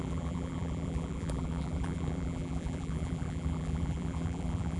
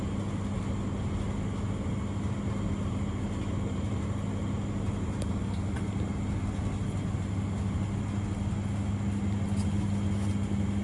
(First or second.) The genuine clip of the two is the second